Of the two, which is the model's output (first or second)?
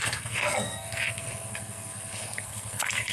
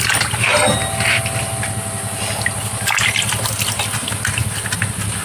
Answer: first